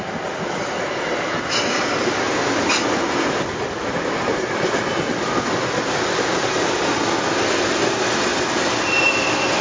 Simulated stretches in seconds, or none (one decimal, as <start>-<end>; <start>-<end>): none